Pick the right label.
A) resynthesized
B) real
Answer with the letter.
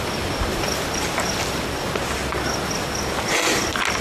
B